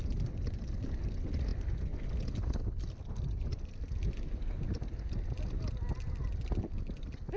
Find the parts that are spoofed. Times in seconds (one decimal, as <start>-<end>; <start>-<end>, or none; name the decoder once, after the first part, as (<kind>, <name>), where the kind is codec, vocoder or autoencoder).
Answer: none